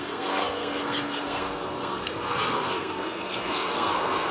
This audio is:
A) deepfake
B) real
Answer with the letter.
A